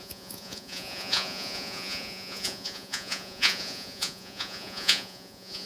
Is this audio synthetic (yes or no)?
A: yes